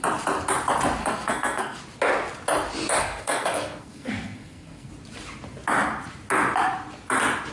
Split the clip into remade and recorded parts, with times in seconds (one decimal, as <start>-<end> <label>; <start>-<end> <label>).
0.0-1.0 recorded; 1.0-1.8 remade; 1.8-3.0 recorded; 3.0-4.9 remade; 4.9-7.5 recorded